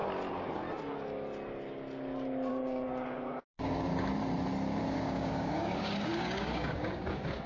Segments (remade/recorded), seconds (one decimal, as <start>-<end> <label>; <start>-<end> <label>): 0.0-2.5 recorded; 2.5-3.9 remade; 3.9-4.8 recorded; 4.8-7.5 remade